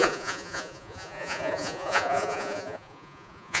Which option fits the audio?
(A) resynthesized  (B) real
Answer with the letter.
A